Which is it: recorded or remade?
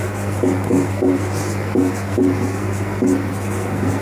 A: remade